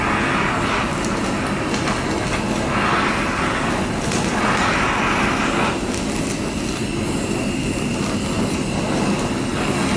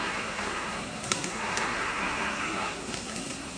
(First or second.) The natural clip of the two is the first